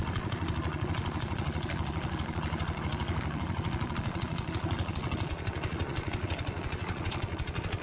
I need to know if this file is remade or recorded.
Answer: remade